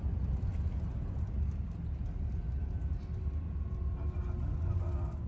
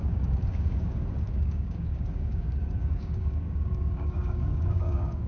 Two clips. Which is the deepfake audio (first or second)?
second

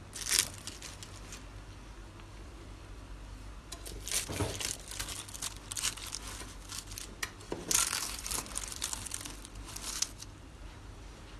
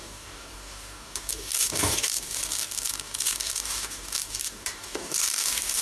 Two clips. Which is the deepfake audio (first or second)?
second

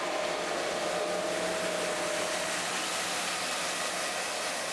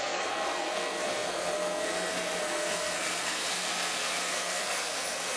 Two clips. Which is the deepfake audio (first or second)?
second